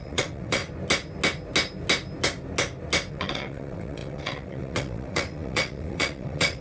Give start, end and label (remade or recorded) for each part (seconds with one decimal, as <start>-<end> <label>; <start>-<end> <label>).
0.0-0.6 remade; 0.6-3.1 recorded; 3.1-6.6 remade